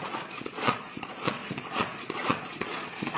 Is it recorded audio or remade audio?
remade